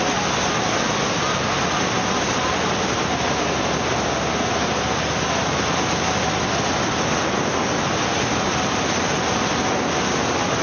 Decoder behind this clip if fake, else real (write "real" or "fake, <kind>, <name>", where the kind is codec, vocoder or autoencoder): real